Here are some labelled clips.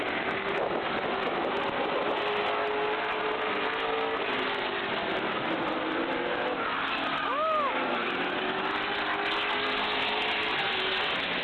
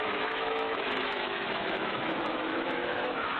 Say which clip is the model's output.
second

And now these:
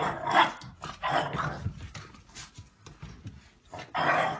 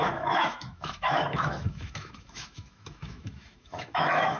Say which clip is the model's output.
second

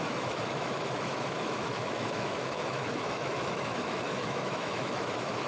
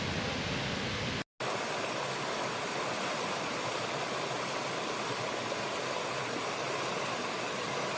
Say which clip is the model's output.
first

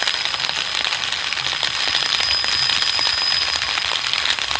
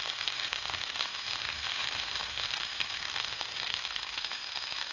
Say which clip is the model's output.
second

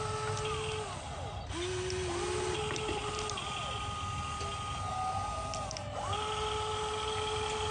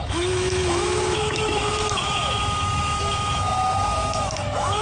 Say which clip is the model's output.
second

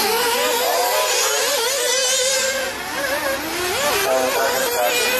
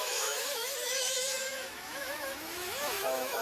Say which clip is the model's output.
second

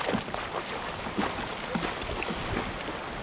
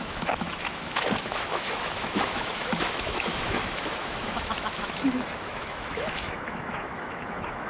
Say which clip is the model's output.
second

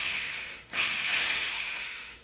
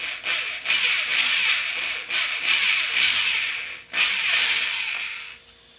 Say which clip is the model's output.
first